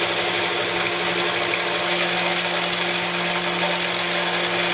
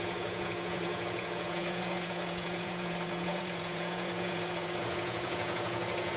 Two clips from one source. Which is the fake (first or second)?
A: second